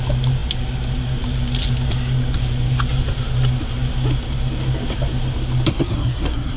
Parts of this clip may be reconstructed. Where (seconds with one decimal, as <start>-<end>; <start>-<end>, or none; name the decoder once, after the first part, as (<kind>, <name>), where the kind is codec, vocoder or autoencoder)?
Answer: 5.7-6.6 (codec, SNAC)